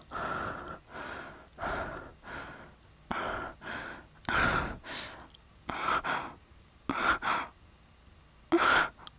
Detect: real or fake real